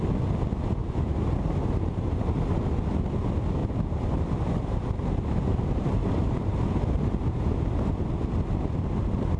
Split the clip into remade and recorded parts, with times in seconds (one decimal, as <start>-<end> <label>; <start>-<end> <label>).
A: 0.0-0.8 recorded; 0.8-2.1 remade; 2.1-3.6 recorded; 3.6-8.1 remade; 8.1-9.4 recorded